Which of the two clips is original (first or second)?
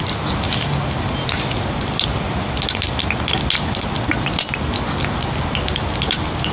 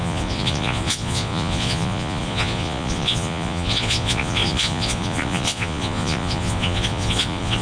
first